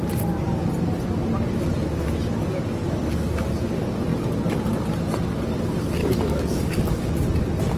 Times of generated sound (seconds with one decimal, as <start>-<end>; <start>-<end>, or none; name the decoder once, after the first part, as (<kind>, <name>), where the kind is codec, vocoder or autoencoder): 6.0-7.1 (codec, DAC)